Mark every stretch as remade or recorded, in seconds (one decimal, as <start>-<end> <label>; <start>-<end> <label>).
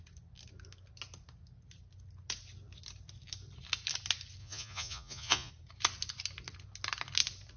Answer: 0.0-4.4 recorded; 4.4-5.5 remade; 5.5-7.6 recorded